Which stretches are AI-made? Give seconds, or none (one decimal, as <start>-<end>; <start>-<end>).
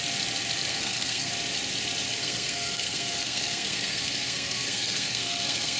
0.7-1.3; 2.2-5.8